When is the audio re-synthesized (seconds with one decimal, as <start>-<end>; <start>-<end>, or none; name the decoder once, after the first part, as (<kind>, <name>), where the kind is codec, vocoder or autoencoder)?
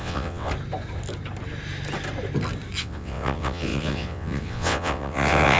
0.0-0.5 (vocoder, WaveNeXt); 2.8-5.6